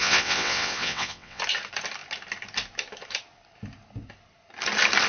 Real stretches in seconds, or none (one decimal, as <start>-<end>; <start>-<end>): 1.4-5.1